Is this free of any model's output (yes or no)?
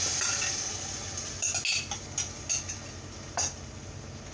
yes